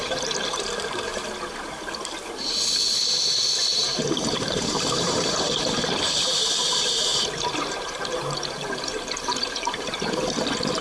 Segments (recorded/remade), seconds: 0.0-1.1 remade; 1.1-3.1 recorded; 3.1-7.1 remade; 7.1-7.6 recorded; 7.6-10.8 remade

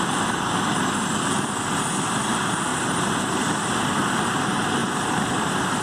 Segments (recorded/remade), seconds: 0.0-2.7 recorded; 2.7-3.5 remade; 3.5-4.8 recorded; 4.8-5.8 remade

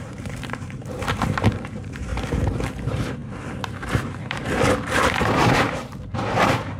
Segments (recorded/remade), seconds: 0.0-2.1 remade; 2.1-2.7 recorded; 2.7-6.8 remade

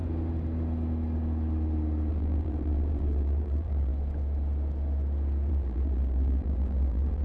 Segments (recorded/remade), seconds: 0.0-2.1 recorded; 2.1-3.9 remade; 3.9-5.5 recorded; 5.5-7.2 remade

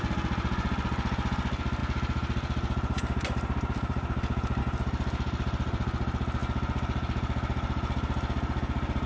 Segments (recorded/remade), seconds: 0.0-1.8 recorded; 1.8-4.6 remade; 4.6-9.1 recorded

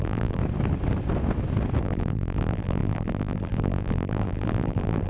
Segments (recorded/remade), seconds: 0.0-0.4 remade; 0.4-1.8 recorded; 1.8-5.1 remade

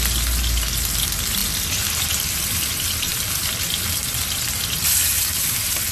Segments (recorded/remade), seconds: 0.0-5.9 recorded

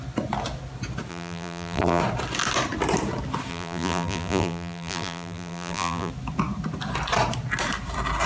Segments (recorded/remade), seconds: 0.0-1.1 recorded; 1.1-2.0 remade; 2.0-3.5 recorded; 3.5-6.1 remade; 6.1-8.3 recorded